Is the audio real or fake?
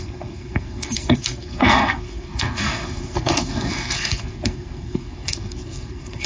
fake